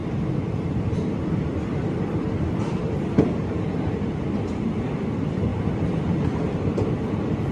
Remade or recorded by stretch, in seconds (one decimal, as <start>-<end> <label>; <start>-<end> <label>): 0.0-4.5 remade; 4.5-7.5 recorded